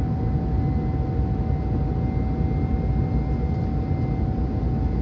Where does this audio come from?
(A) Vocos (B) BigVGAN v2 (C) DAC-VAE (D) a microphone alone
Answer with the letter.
D